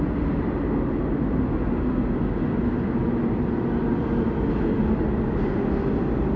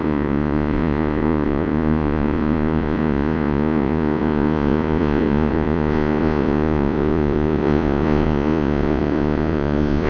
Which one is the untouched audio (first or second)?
first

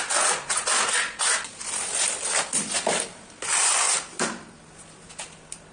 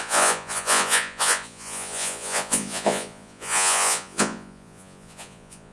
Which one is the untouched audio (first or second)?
first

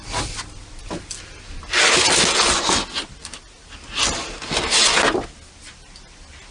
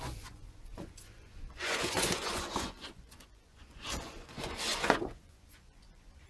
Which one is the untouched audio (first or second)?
first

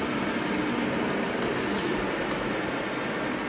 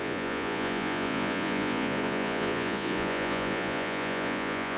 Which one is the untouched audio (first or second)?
first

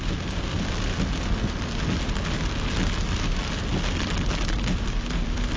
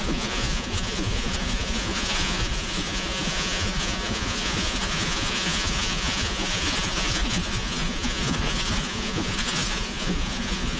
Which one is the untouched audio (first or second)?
first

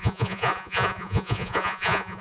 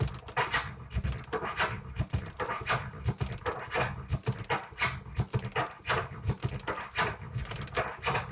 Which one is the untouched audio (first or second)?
second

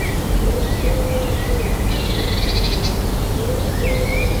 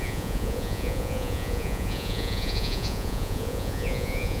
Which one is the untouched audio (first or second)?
first